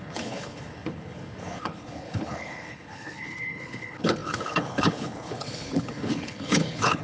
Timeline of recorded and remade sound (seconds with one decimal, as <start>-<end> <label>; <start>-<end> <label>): 0.0-7.0 remade